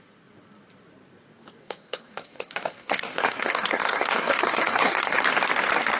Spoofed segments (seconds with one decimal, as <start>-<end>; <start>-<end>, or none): 1.6-5.2